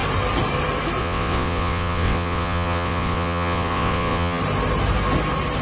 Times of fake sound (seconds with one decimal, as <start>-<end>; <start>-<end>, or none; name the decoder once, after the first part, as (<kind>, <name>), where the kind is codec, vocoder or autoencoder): 1.0-4.4 (vocoder, WaveNeXt)